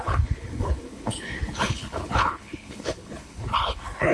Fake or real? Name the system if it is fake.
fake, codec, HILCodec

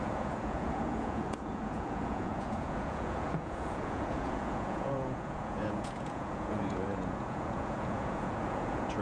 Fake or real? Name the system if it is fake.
fake, vocoder, Vocos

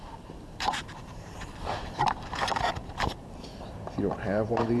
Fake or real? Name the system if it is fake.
fake, vocoder, BigVGAN v2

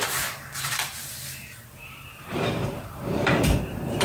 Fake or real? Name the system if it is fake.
fake, vocoder, BigVGAN v2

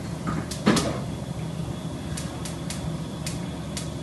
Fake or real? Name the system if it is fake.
real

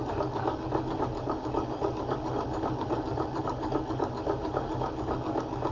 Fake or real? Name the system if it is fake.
fake, codec, DAC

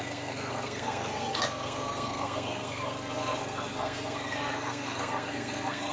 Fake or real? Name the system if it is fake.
fake, codec, SNAC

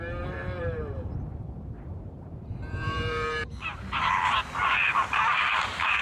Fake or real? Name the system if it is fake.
fake, vocoder, BigVGAN v2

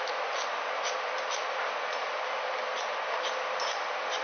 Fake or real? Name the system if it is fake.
real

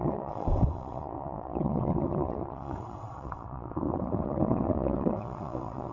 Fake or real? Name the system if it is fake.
fake, vocoder, WaveNeXt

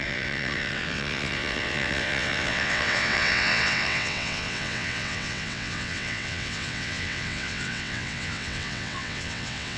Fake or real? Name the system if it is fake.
fake, vocoder, WaveNeXt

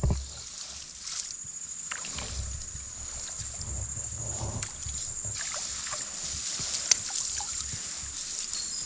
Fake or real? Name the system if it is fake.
real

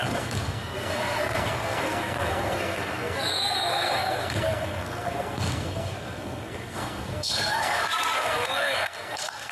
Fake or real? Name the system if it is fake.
fake, codec, SNAC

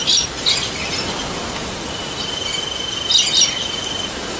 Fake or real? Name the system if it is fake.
real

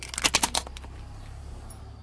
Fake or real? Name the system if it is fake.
real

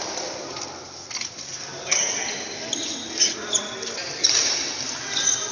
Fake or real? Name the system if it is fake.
real